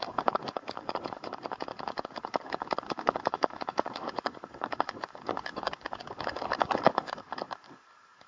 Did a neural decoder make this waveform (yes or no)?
yes